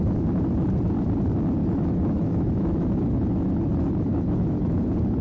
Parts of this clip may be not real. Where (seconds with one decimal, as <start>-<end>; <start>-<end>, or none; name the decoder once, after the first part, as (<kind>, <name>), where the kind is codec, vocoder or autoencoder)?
1.6-4.7 (autoencoder, DAC-VAE)